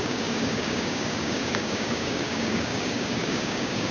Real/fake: fake